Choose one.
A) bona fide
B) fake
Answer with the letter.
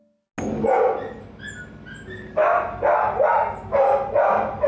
A